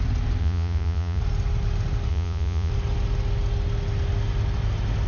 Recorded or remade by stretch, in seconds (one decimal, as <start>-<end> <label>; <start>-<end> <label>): 0.0-0.4 recorded; 0.4-1.2 remade; 1.2-2.1 recorded; 2.1-2.7 remade; 2.7-5.1 recorded